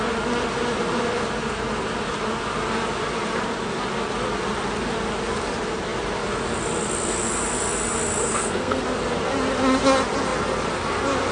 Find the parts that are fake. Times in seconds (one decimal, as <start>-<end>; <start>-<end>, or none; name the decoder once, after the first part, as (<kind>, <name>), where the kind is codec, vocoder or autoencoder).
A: 8.2-8.8 (codec, SNAC)